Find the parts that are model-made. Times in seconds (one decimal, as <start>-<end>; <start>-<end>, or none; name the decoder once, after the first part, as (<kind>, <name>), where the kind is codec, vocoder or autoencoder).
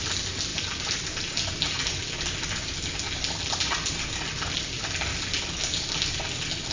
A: none